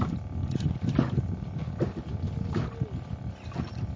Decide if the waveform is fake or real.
real